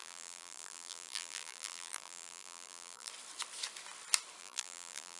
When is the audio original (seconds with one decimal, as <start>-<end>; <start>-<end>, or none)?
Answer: 3.1-4.4